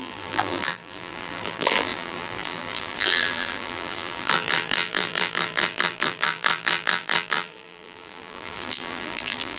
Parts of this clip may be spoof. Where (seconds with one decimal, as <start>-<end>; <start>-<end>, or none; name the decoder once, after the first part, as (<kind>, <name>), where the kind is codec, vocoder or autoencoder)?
0.0-9.6 (vocoder, BigVGAN v2)